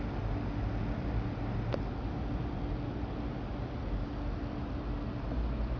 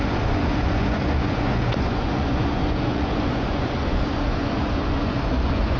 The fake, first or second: second